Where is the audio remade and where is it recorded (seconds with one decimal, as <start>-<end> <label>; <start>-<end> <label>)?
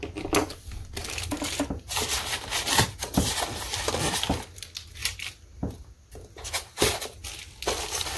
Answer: 0.0-8.2 recorded